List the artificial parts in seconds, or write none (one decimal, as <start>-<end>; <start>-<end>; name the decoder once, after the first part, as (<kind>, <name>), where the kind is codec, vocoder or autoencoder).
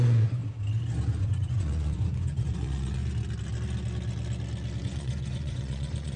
0.0-0.4 (vocoder, Vocos); 1.1-3.0; 4.8-6.2